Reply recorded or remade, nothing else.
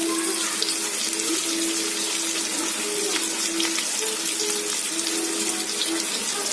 recorded